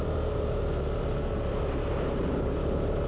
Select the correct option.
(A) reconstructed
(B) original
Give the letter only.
B